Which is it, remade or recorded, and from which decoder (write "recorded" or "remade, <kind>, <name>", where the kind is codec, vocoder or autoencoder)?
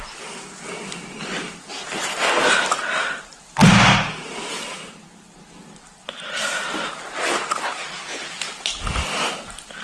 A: recorded